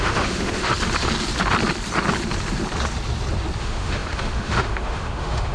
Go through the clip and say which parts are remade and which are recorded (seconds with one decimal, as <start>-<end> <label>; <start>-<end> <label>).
0.0-0.7 remade; 0.7-3.6 recorded; 3.6-5.5 remade